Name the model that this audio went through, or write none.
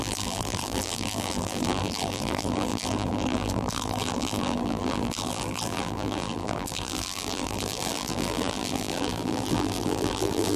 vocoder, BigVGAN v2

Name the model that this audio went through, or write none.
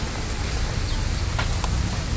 none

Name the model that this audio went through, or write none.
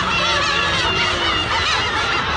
none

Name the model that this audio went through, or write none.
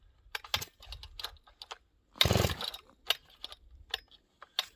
none